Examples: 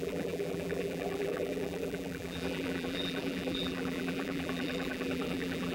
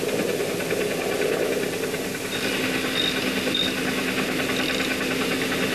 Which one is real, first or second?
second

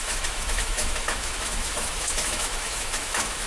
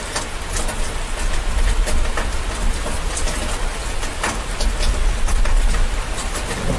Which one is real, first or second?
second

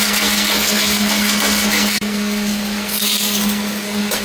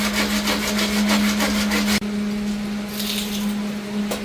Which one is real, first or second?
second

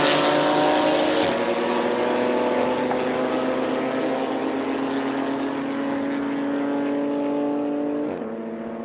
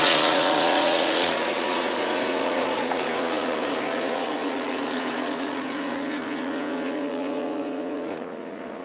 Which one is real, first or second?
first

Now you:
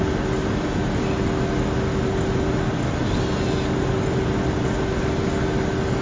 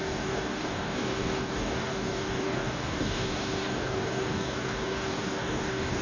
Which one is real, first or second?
first